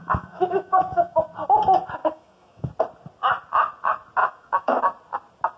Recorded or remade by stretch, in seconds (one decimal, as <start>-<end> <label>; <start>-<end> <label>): 0.0-1.2 remade; 1.2-2.0 recorded; 2.0-2.7 remade; 2.7-4.2 recorded; 4.2-4.8 remade; 4.8-5.6 recorded